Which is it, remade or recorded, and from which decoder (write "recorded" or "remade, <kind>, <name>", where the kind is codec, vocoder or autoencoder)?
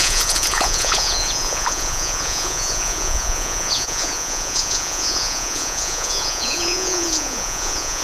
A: remade, vocoder, Vocos